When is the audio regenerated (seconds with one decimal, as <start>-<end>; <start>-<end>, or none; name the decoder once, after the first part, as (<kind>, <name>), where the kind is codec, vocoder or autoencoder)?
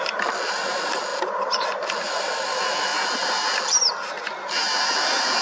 none